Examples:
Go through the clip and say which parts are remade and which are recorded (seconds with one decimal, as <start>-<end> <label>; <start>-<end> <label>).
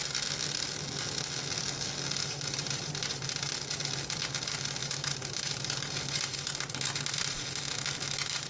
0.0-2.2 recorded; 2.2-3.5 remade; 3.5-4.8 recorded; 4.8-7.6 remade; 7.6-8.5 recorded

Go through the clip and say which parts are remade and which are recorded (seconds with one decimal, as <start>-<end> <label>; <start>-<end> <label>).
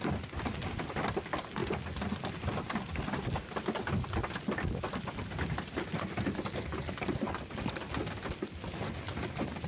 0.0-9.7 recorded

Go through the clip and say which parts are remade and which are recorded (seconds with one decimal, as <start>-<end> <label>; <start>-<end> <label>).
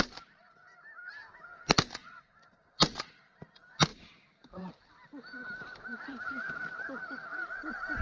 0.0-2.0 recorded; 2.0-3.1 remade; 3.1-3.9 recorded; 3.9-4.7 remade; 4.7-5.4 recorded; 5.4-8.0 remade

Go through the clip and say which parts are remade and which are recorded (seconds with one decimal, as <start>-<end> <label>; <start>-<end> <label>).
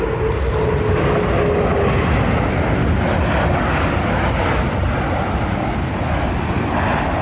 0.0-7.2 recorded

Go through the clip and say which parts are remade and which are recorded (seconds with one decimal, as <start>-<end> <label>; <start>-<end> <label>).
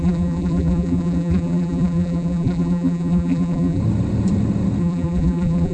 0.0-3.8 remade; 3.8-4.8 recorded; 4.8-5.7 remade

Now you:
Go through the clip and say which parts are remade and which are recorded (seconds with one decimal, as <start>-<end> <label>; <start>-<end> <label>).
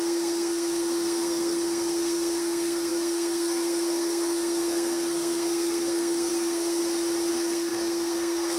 0.0-6.8 remade; 6.8-7.3 recorded; 7.3-8.6 remade